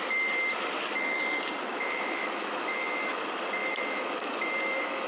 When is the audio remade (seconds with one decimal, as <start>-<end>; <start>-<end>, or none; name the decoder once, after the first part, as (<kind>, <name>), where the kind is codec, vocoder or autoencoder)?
1.7-3.2 (autoencoder, DAC-VAE); 3.6-5.1